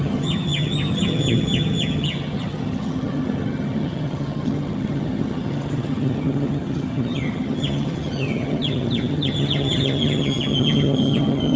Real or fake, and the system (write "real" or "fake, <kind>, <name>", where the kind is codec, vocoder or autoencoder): fake, vocoder, HiFi-GAN